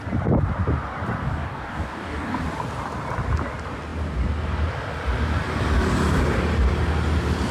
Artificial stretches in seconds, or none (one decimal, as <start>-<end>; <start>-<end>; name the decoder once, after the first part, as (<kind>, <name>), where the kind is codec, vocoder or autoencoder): 1.2-2.4 (codec, DAC)